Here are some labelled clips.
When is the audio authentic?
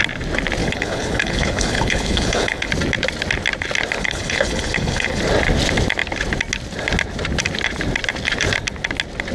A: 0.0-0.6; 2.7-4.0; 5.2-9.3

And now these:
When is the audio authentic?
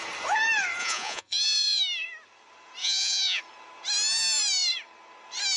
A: 0.0-0.8; 1.8-2.8; 3.4-5.6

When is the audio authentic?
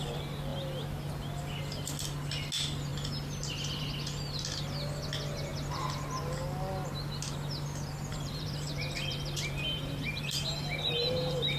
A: 0.0-8.1